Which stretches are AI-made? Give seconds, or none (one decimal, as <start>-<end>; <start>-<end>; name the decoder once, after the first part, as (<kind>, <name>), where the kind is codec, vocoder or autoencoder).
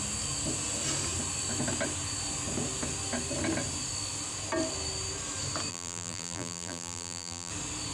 5.7-7.5 (vocoder, BigVGAN v2)